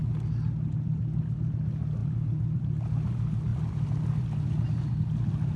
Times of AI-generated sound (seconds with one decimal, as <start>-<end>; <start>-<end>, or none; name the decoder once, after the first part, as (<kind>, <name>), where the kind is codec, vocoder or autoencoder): 2.0-2.6 (vocoder, BigVGAN v2); 3.5-5.6